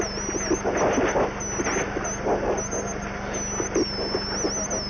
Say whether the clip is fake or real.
real